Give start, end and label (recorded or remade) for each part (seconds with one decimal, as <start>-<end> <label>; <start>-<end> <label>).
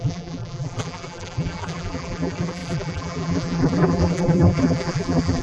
0.0-5.4 remade